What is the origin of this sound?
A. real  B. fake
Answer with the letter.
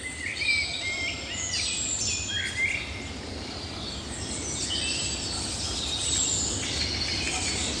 A